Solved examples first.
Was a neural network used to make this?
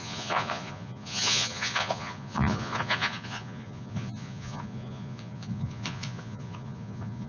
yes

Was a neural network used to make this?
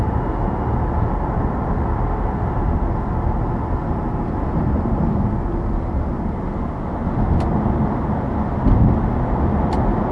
no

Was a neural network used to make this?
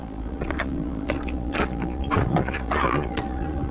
yes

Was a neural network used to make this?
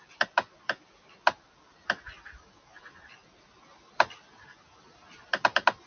no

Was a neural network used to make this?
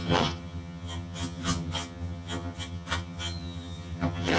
yes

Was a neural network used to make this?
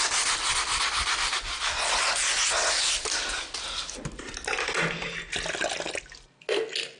no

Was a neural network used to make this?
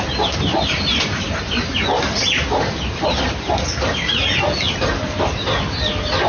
no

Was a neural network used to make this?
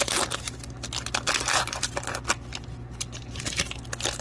no